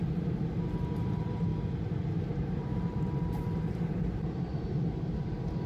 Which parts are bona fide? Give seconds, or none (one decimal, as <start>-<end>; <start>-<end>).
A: 1.5-2.2; 4.5-5.2